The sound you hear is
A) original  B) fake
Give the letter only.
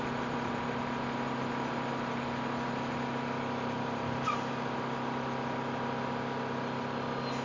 A